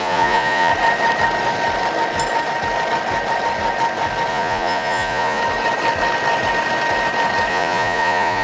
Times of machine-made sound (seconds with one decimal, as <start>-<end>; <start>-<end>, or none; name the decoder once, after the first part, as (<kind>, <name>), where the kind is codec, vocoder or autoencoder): 0.0-0.7 (vocoder, Vocos); 4.3-5.4; 7.5-8.4